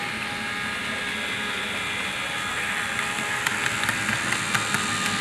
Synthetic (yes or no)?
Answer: no